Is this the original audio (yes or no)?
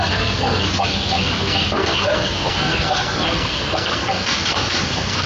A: no